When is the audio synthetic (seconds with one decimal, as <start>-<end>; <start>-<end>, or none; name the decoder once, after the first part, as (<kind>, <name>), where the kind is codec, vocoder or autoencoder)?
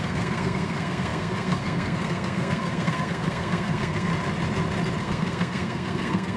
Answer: 0.0-4.1 (codec, SNAC); 5.0-6.4